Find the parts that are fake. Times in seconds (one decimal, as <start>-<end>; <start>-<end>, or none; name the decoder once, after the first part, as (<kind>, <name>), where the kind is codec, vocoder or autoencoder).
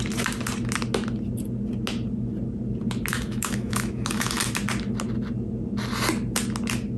3.1-4.5 (autoencoder, DAC-VAE)